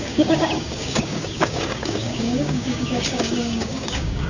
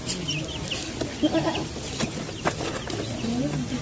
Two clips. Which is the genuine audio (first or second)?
second